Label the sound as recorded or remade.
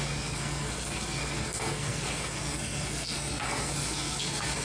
remade